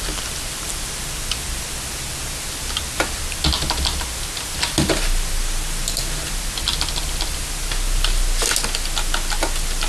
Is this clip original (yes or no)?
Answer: yes